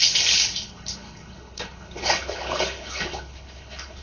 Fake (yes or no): yes